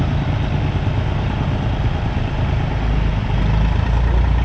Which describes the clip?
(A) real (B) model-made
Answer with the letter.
A